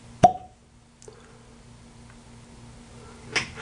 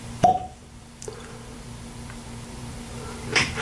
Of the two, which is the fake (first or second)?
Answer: second